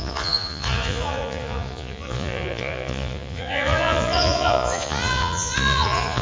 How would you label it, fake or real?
fake